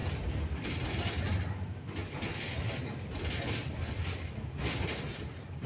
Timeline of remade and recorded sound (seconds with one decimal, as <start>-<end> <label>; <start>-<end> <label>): 0.0-5.7 recorded